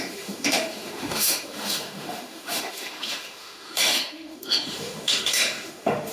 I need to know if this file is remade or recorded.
remade